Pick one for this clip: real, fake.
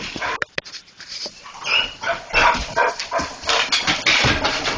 real